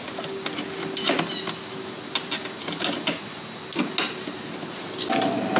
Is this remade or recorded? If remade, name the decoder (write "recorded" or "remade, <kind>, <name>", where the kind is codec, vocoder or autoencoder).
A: recorded